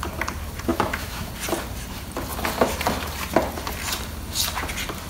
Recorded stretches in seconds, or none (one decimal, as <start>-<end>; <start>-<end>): 0.0-0.7; 1.3-5.1